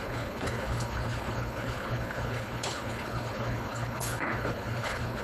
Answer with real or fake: fake